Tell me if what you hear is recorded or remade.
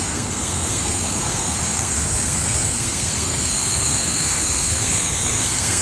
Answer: remade